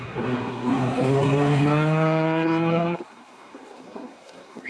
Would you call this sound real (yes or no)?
no